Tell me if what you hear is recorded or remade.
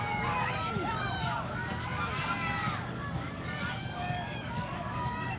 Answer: remade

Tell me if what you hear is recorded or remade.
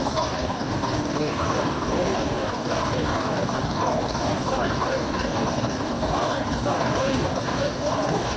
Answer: remade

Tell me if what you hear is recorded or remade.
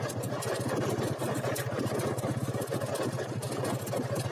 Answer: recorded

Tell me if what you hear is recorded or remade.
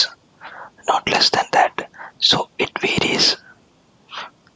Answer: recorded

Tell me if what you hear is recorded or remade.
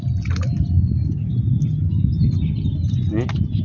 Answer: recorded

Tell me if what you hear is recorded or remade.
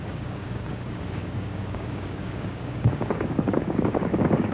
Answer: remade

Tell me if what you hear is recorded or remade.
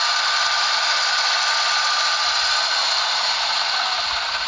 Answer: recorded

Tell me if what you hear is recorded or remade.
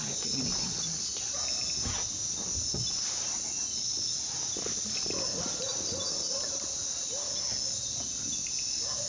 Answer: recorded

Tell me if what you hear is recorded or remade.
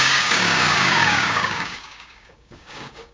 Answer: remade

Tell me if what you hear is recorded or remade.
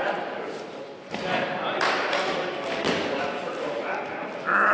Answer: recorded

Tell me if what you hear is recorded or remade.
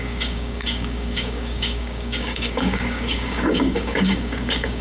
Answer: remade